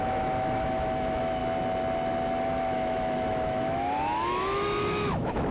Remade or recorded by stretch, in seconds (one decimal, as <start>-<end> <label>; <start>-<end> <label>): 0.0-1.4 remade; 1.4-2.4 recorded; 2.4-5.5 remade